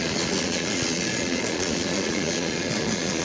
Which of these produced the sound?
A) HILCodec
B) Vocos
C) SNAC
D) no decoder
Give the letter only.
B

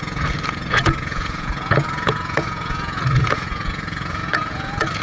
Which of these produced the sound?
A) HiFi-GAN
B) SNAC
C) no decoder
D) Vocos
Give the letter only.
D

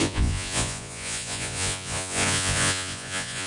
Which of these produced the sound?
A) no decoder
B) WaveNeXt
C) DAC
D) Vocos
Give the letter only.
D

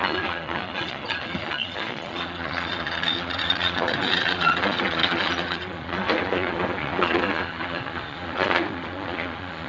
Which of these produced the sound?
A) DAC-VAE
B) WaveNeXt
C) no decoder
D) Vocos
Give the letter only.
D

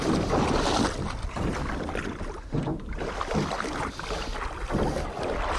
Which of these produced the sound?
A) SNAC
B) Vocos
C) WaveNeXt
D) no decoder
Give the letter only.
D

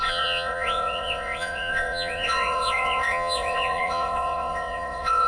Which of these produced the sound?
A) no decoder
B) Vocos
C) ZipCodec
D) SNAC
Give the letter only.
B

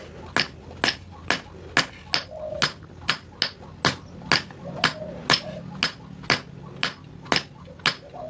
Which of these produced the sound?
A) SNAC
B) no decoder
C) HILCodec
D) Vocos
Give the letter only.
B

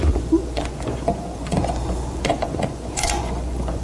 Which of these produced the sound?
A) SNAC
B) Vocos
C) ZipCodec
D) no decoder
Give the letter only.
B